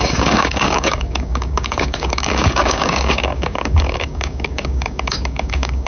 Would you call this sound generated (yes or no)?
yes